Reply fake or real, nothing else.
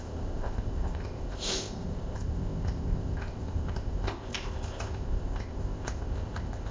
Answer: fake